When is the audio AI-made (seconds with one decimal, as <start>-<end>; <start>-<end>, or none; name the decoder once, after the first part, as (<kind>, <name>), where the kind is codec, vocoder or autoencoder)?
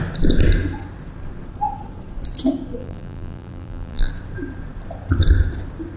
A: 2.8-4.1 (vocoder, BigVGAN v2)